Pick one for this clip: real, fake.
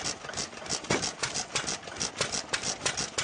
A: real